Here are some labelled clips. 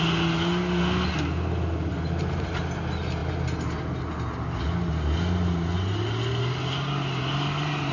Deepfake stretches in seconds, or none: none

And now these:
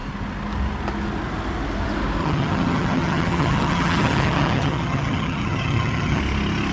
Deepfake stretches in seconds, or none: 2.2-6.2 (vocoder, HiFi-GAN)

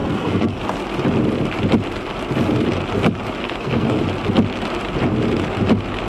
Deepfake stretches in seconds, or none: 0.0-0.6 (codec, SNAC); 3.4-4.0

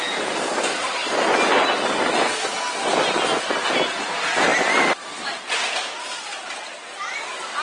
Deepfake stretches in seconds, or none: none

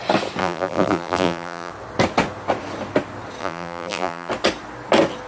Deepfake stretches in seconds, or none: 0.4-1.7 (vocoder, BigVGAN v2); 3.4-4.3

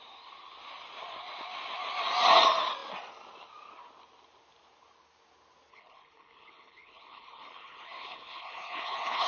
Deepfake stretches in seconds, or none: 5.7-9.3 (codec, HILCodec)